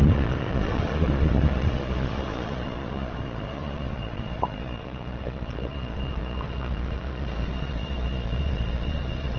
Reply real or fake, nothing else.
fake